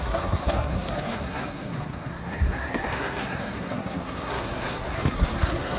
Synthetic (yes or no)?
yes